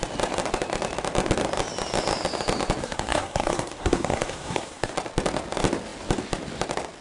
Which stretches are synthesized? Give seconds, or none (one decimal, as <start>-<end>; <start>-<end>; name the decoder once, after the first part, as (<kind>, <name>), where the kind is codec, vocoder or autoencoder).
2.8-4.9 (codec, SNAC)